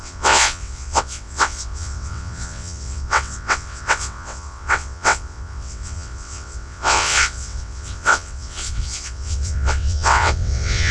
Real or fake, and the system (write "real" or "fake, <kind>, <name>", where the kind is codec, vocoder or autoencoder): fake, vocoder, WaveNeXt